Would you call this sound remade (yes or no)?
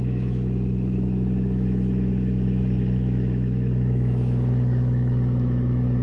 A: yes